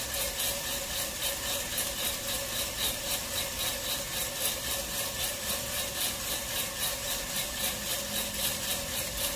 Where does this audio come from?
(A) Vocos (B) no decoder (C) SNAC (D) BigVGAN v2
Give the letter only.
B